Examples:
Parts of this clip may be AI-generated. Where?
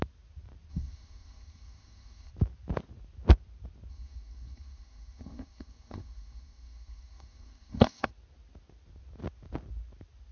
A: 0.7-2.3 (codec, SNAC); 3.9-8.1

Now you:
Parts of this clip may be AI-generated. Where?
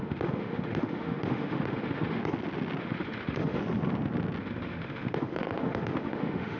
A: 0.0-2.2 (autoencoder, DAC-VAE); 2.8-3.6; 4.4-6.6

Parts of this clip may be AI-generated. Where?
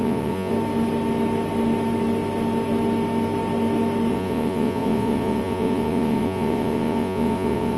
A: 0.0-0.5 (vocoder, Vocos); 4.1-7.8